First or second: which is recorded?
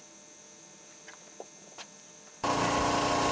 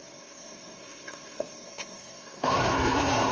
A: first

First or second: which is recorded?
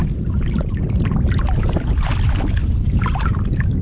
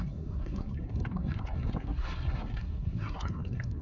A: first